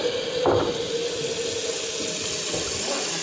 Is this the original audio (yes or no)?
yes